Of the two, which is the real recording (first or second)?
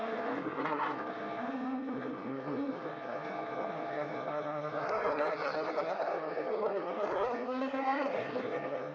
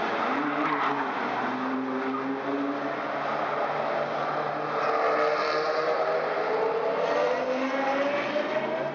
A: second